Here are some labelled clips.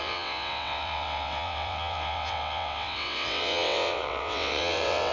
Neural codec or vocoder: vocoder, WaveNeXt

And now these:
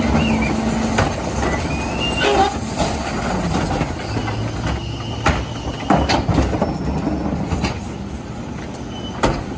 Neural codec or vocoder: none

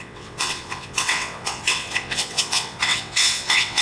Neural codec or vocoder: vocoder, WaveNeXt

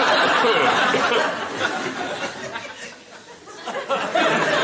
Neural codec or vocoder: none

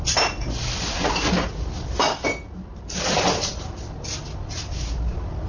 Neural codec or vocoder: none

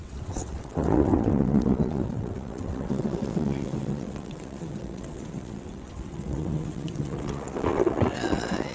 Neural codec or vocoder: vocoder, WaveNeXt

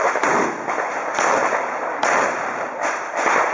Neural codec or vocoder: none